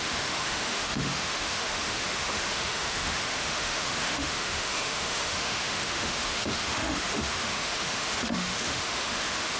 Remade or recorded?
remade